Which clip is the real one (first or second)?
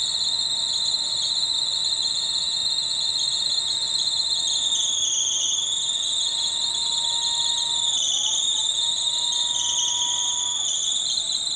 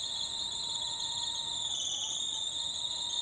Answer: first